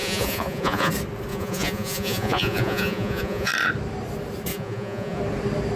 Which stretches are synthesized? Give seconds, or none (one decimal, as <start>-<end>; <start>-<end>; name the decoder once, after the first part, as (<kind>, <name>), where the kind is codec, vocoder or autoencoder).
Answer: 0.0-0.9 (vocoder, Vocos); 1.3-3.5; 4.5-5.2